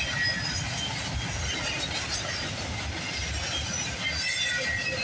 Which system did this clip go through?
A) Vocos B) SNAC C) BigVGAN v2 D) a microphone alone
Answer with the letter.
D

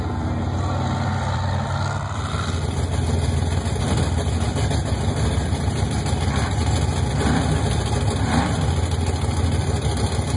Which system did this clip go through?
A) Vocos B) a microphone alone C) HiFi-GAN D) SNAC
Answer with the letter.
B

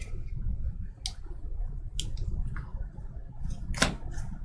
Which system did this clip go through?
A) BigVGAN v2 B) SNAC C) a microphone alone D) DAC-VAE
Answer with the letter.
C